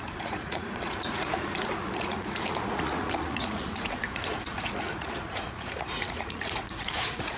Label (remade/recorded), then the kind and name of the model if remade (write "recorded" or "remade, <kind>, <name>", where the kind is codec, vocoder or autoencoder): remade, vocoder, Vocos